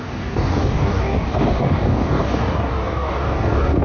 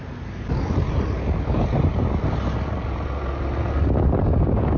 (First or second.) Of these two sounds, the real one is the second